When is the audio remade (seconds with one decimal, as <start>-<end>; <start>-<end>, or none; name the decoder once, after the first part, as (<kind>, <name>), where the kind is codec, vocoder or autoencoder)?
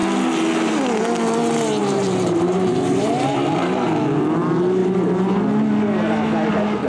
1.8-3.7 (vocoder, BigVGAN v2)